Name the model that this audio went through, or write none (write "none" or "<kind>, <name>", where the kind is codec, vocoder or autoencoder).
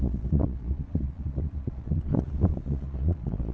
vocoder, Vocos